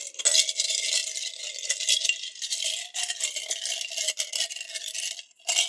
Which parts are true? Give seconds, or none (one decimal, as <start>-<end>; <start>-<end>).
0.0-5.7